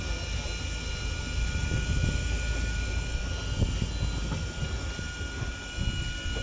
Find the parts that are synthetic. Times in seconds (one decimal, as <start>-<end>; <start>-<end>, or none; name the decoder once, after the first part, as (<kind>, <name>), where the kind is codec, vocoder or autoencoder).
none